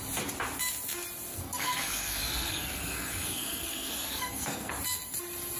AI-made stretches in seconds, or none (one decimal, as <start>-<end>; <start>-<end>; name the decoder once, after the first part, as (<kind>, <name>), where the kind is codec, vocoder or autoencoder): 1.3-4.7 (codec, SNAC)